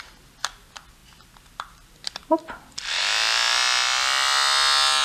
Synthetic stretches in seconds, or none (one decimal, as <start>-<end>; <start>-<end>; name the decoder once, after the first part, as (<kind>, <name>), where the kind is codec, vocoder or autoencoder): none